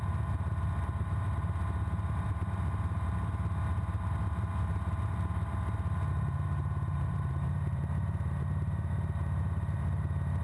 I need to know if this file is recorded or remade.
remade